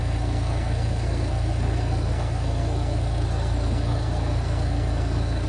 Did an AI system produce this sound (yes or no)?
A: yes